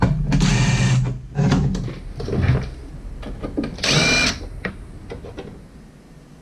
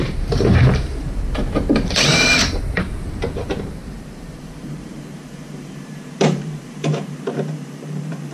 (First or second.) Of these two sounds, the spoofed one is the second